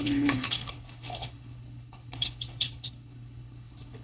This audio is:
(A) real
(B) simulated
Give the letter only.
B